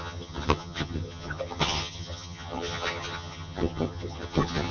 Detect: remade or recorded remade